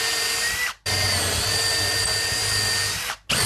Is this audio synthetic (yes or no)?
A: no